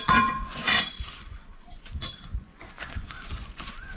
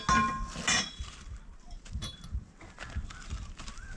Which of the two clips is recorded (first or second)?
second